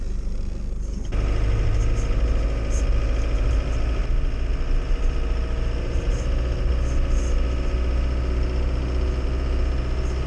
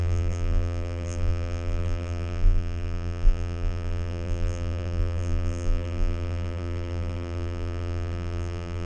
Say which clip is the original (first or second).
first